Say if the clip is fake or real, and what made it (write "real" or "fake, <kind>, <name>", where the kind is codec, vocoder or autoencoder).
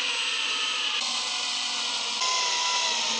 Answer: real